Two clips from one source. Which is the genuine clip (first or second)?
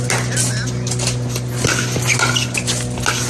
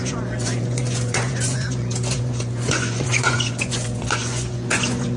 first